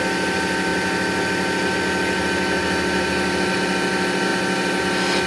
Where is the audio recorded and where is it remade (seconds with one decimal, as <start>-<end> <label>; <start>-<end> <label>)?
0.0-5.3 recorded